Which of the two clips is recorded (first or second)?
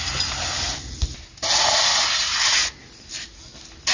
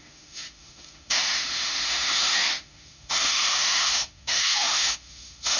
first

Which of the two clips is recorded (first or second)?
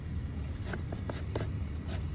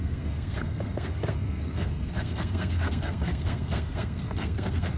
first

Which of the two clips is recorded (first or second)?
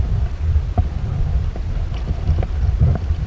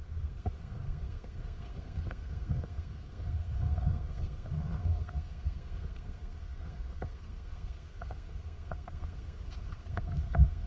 first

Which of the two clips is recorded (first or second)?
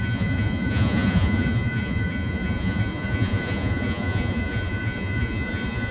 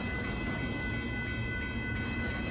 second